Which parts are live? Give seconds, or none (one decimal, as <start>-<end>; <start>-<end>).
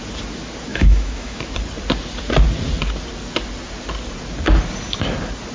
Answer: 0.0-0.7; 1.4-5.5